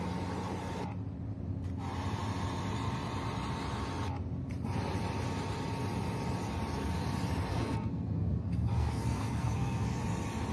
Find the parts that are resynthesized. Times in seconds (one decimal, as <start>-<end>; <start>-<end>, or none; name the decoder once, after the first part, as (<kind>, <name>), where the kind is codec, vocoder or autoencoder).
7.5-10.0 (codec, SNAC)